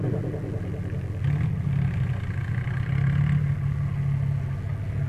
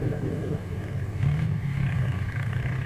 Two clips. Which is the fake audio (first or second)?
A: second